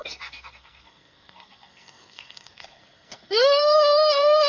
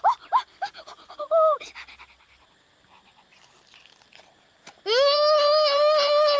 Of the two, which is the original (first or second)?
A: second